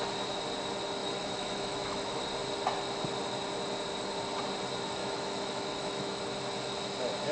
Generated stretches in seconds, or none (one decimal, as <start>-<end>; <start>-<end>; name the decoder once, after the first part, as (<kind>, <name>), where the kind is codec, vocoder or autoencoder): 1.0-2.2 (autoencoder, DAC-VAE); 5.0-6.2